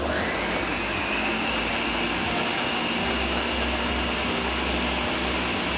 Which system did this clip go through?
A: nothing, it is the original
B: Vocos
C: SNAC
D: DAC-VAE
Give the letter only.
A